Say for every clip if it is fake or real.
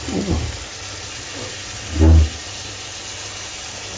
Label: real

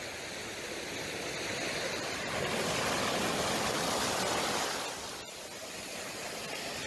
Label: real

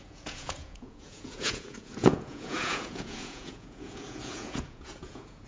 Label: fake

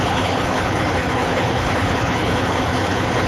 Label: fake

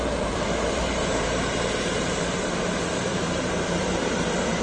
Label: fake